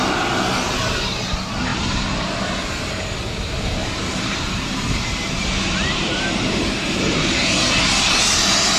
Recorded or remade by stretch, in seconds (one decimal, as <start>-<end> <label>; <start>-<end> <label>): 0.0-1.7 recorded; 1.7-2.3 remade; 2.3-3.8 recorded; 3.8-6.2 remade; 6.2-8.8 recorded